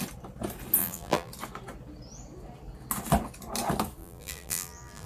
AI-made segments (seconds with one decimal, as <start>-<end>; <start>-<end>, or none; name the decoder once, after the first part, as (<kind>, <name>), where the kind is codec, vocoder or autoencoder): 0.8-1.3 (vocoder, BigVGAN v2); 4.0-5.1